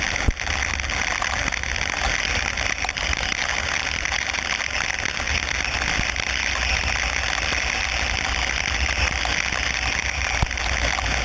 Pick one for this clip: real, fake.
real